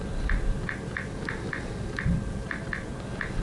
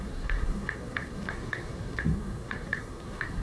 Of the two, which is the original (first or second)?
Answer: first